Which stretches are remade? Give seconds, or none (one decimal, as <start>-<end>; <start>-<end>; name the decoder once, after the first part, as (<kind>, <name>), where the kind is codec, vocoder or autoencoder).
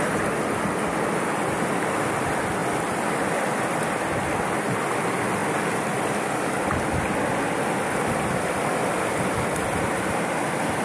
none